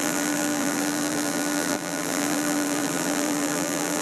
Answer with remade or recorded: remade